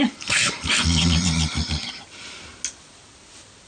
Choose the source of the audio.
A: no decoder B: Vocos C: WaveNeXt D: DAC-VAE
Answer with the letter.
A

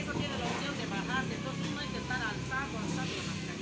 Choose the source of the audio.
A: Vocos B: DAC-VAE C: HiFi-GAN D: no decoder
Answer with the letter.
D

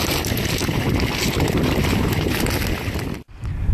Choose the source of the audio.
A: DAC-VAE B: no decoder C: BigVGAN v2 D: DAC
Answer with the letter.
B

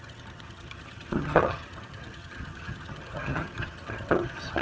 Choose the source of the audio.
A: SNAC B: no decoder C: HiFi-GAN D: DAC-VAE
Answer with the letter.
C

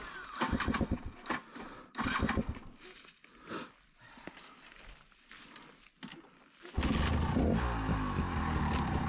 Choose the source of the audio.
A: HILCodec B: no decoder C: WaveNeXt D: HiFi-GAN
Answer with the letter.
B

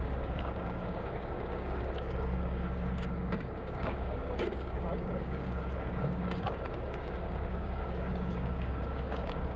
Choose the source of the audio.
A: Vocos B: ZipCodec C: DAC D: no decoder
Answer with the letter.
C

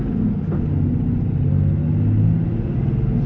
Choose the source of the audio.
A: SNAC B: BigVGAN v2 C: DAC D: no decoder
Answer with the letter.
D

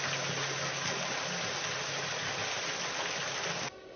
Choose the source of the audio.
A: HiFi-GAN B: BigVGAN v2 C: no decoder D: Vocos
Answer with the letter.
C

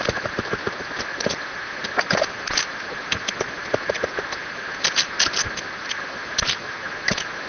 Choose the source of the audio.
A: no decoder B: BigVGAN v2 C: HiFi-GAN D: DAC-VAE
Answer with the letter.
A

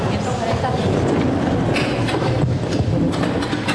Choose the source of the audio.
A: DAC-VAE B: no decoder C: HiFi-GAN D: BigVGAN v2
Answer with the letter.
B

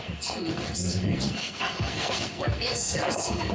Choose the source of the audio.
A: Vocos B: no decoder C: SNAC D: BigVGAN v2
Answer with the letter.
C